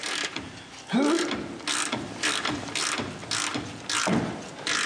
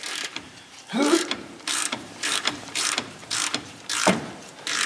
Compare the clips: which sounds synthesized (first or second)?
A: second